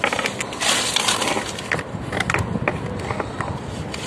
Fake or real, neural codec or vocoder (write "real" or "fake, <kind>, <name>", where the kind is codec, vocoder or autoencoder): real